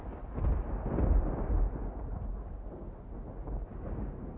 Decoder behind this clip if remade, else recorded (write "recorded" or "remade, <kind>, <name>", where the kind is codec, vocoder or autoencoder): recorded